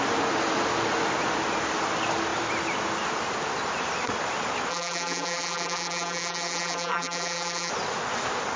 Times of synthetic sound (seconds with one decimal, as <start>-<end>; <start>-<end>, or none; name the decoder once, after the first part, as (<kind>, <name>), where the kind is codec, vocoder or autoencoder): 4.7-7.7 (vocoder, BigVGAN v2)